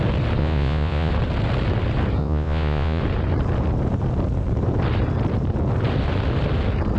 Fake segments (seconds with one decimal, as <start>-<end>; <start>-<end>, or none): 0.4-1.1; 2.2-3.0